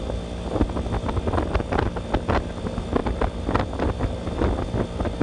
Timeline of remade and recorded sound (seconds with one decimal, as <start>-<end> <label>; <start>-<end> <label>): 0.0-5.2 recorded